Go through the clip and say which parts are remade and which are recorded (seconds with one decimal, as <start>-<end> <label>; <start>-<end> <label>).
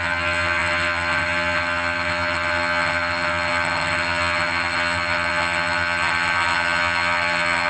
0.0-7.7 remade